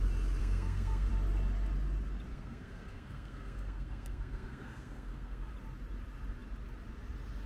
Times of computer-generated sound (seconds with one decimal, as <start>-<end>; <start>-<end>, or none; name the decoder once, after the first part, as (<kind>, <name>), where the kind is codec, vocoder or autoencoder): 0.4-1.1 (codec, SNAC); 2.3-5.5